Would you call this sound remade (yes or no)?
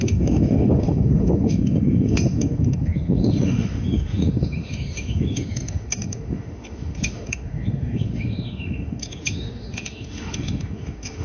yes